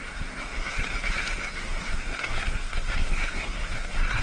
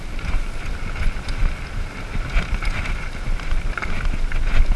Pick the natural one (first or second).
second